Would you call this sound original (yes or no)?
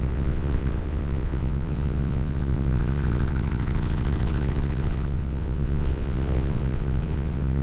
no